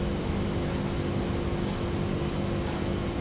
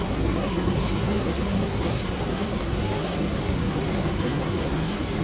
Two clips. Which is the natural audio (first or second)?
first